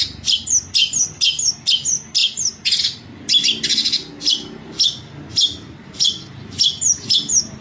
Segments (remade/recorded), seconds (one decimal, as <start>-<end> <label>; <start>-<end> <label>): 0.0-0.8 recorded; 0.8-1.5 remade; 1.5-7.6 recorded